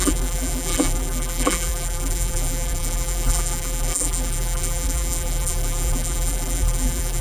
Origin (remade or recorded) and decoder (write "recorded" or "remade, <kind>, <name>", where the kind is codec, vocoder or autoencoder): remade, vocoder, BigVGAN v2